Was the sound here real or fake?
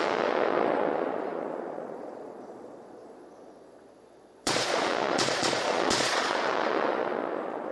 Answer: fake